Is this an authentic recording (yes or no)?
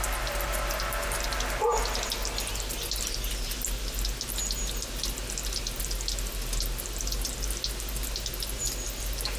yes